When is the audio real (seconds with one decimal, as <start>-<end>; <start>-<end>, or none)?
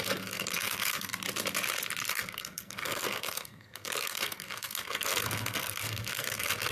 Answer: 1.1-2.1